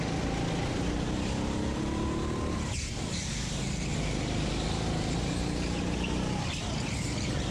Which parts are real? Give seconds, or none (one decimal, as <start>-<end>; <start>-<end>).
0.0-7.5